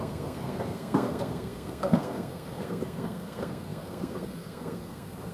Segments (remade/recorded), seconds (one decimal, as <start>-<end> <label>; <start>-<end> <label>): 0.0-5.3 remade